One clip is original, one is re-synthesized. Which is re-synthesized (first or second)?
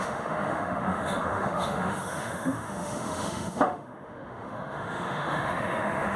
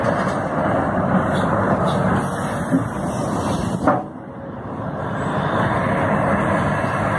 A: first